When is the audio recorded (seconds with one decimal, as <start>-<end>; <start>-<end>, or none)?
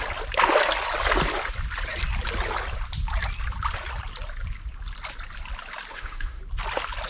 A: 0.0-5.9; 6.4-7.1